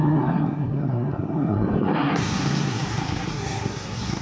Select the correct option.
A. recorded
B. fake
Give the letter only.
B